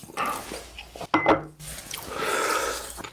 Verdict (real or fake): real